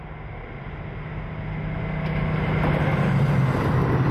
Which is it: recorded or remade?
recorded